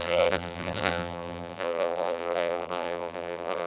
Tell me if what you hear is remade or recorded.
remade